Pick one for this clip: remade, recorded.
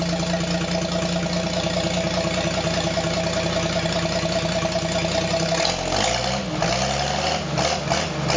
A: recorded